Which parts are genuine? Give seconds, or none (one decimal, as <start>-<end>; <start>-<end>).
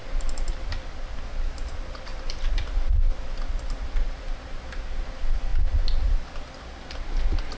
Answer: 0.5-2.1; 3.5-7.6